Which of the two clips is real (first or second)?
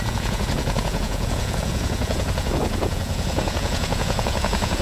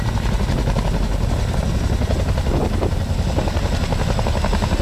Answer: second